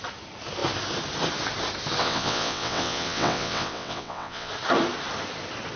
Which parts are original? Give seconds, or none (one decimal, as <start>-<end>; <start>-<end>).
0.0-2.0; 4.5-5.8